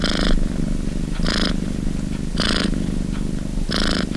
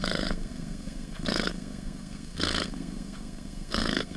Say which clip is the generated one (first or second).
second